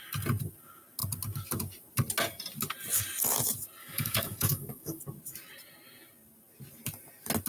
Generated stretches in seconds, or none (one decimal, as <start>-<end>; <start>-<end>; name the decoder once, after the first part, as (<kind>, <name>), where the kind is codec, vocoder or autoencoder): 3.8-5.0 (codec, DAC)